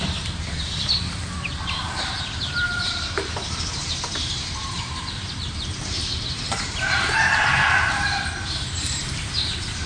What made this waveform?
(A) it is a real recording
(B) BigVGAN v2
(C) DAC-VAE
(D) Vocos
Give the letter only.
B